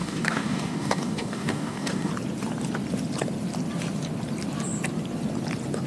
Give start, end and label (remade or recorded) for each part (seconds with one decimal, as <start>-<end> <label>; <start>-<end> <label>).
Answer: 0.0-2.1 remade; 2.1-5.9 recorded